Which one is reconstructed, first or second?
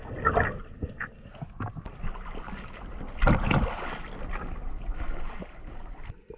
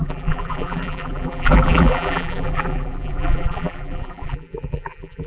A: second